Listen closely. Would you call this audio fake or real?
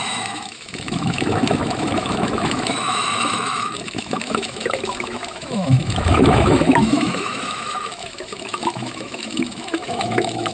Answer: fake